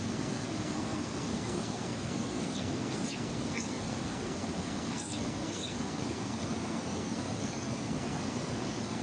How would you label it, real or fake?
fake